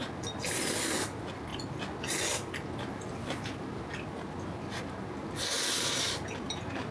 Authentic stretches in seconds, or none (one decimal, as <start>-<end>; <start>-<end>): 0.0-6.9